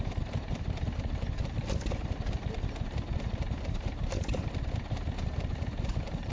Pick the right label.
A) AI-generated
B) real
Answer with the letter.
B